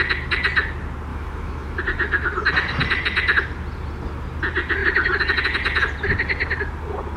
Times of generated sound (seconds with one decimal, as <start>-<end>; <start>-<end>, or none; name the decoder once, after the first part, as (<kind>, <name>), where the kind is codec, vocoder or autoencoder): 1.1-1.8 (autoencoder, DAC-VAE)